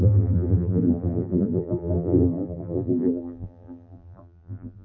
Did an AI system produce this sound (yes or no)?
yes